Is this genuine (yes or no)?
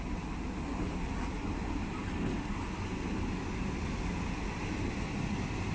yes